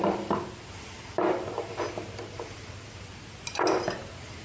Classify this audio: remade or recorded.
recorded